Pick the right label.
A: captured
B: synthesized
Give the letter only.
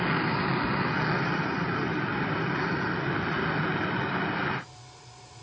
A